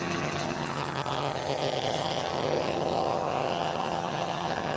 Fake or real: fake